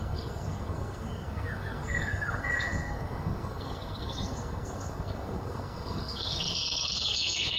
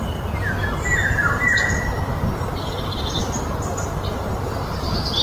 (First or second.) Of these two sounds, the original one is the second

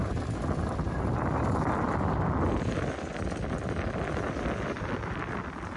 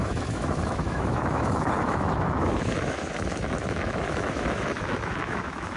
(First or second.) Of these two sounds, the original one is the first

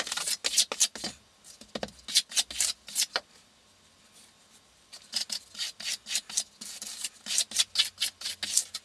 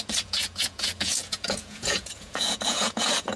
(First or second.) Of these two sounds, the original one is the first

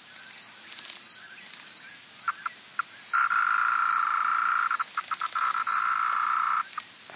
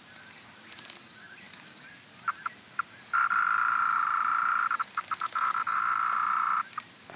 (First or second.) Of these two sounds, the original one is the first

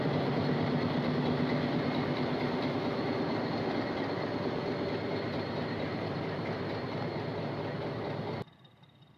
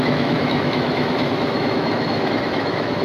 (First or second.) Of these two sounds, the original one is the first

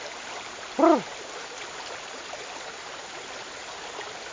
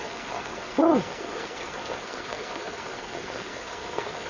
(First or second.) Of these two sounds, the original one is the first